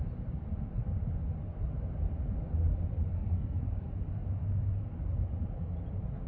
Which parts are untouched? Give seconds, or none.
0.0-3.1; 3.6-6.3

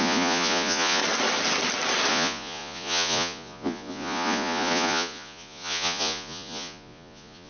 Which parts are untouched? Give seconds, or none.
1.0-2.1

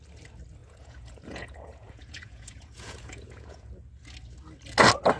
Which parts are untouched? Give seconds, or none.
0.0-0.6; 3.7-5.2

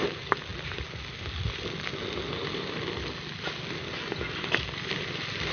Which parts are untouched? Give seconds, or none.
0.0-5.5

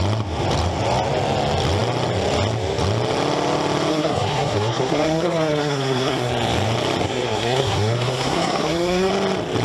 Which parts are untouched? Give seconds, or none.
0.0-3.9; 6.3-7.0; 9.1-9.6